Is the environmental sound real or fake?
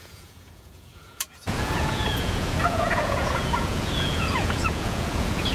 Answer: fake